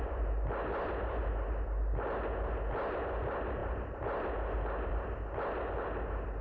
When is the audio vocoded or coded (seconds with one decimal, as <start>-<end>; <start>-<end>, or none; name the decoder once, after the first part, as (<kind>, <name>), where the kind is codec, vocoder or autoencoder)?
none